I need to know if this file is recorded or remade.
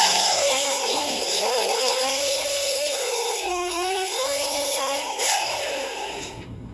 remade